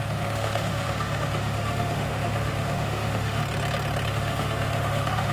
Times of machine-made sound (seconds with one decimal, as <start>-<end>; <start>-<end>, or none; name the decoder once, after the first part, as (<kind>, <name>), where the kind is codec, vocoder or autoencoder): 0.0-3.4 (autoencoder, DAC-VAE); 4.1-5.3